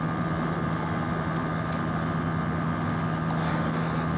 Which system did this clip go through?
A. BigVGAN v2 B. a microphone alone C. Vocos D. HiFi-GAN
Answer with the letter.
B